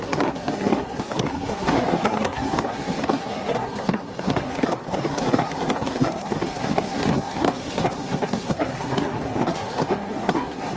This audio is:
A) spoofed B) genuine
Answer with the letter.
A